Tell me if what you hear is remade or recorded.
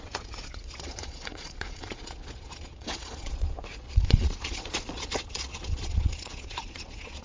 remade